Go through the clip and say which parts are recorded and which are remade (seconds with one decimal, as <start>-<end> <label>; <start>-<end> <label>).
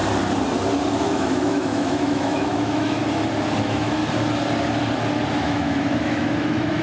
0.0-1.0 recorded; 1.0-3.0 remade; 3.0-3.6 recorded; 3.6-4.0 remade; 4.0-5.3 recorded; 5.3-6.8 remade